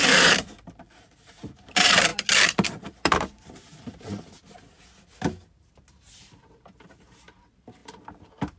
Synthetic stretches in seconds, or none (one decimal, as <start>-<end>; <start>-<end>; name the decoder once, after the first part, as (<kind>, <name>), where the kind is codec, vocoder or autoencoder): 0.0-2.1 (vocoder, BigVGAN v2); 2.8-3.7; 6.1-8.6